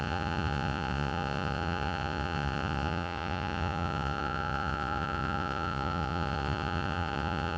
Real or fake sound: fake